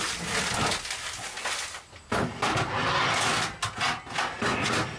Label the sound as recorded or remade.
recorded